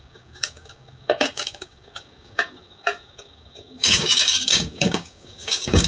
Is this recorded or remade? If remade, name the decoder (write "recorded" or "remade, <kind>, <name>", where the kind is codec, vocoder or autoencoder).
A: remade, codec, DAC